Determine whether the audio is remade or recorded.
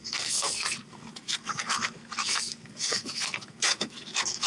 remade